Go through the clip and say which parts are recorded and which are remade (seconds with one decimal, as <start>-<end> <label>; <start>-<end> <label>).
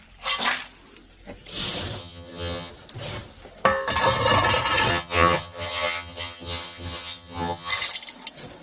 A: 0.0-2.0 recorded; 2.0-2.7 remade; 2.7-4.9 recorded; 4.9-7.7 remade; 7.7-8.6 recorded